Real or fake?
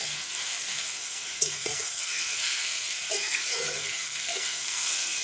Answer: fake